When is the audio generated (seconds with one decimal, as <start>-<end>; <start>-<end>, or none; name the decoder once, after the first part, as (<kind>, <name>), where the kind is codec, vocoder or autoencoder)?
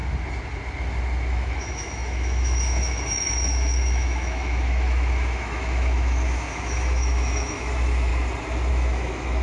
1.3-8.1 (autoencoder, DAC-VAE); 8.7-9.4